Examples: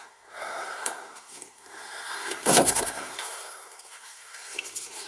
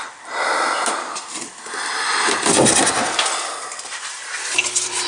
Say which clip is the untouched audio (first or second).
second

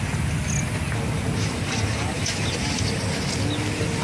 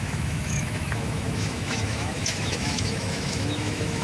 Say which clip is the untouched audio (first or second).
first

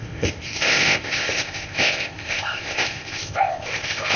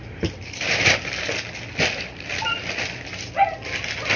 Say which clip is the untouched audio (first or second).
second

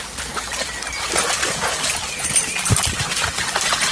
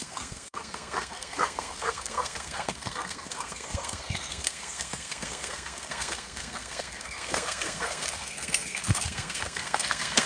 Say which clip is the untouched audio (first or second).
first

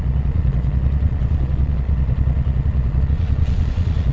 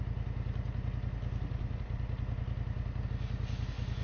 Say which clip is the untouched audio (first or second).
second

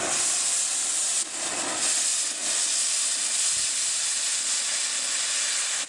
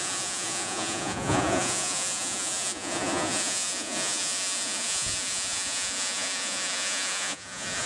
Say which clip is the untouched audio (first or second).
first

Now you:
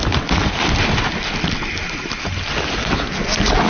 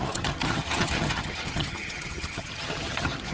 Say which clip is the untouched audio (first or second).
first